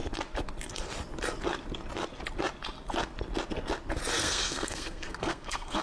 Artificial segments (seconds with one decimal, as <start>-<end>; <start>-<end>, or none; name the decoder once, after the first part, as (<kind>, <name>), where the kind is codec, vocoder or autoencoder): 4.2-5.8 (codec, SNAC)